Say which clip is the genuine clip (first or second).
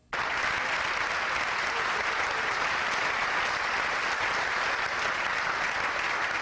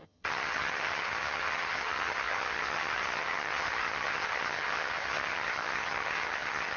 first